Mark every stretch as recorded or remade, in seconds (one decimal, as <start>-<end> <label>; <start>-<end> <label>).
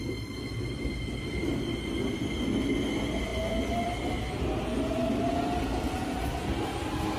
0.0-7.2 recorded